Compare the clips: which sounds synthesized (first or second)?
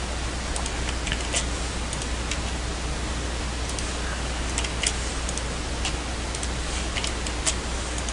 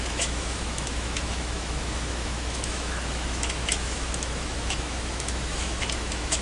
second